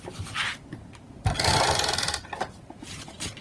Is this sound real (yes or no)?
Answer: yes